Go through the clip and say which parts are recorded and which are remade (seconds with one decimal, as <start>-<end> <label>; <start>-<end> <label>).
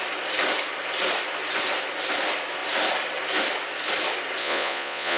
0.0-4.4 recorded; 4.4-5.2 remade